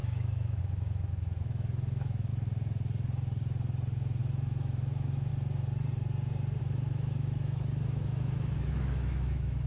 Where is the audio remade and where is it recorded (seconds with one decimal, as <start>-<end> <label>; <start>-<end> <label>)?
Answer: 0.0-2.3 remade; 2.3-4.2 recorded; 4.2-5.3 remade; 5.3-6.6 recorded; 6.6-9.7 remade